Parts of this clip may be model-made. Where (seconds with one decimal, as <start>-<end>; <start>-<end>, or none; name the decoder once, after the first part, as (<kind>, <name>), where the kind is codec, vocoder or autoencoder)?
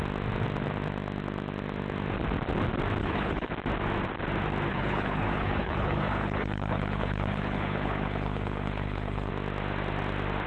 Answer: 3.0-3.5 (codec, HILCodec); 4.7-9.3